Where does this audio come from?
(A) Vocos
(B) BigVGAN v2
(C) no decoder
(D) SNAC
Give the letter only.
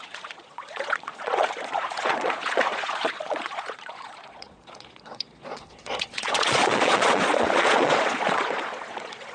A